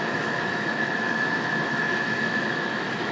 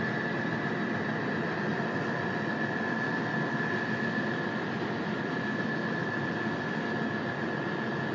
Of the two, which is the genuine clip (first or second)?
second